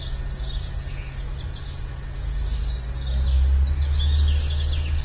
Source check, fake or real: real